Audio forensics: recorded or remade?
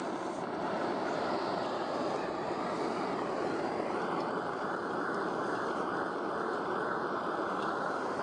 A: remade